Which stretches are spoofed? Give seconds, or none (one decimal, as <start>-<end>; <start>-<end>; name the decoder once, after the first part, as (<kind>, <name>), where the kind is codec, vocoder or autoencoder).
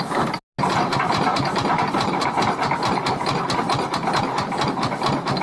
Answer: 1.3-2.3 (vocoder, BigVGAN v2)